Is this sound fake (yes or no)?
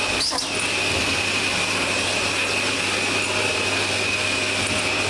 no